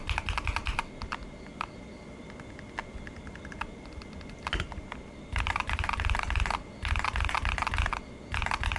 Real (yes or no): yes